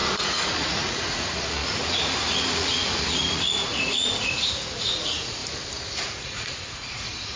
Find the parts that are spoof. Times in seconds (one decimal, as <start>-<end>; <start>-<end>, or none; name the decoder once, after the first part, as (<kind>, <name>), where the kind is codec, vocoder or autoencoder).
0.0-5.4 (vocoder, Vocos); 6.0-7.4